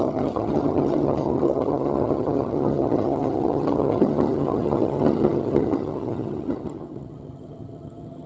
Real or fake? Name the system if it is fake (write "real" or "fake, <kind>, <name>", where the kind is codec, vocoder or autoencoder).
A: fake, vocoder, HiFi-GAN